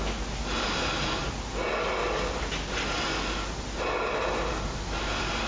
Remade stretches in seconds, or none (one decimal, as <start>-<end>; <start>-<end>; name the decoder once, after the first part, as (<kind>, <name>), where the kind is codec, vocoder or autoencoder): none